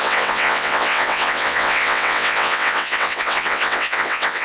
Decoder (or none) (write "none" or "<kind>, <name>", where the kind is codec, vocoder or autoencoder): vocoder, WaveNeXt